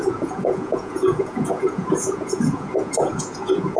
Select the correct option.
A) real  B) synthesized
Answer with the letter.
B